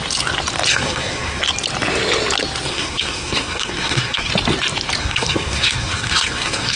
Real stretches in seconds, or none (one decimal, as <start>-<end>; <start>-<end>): 0.0-0.7; 1.4-2.7; 4.3-5.0